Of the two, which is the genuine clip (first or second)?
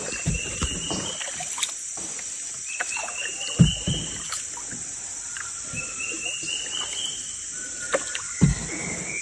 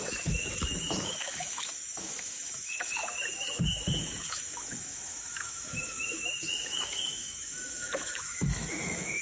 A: first